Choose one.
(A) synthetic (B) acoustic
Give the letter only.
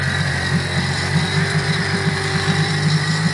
A